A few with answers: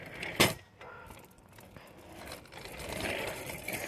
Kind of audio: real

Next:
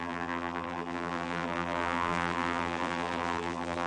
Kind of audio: fake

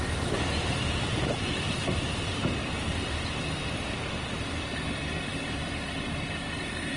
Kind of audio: fake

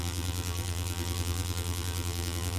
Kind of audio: fake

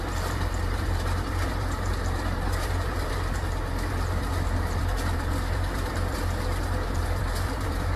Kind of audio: fake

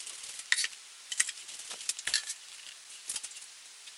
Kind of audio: real